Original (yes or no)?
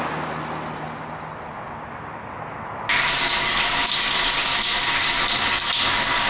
yes